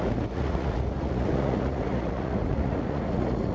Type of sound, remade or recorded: remade